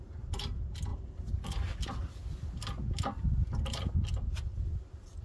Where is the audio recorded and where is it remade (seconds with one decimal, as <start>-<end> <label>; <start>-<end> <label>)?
0.0-5.2 recorded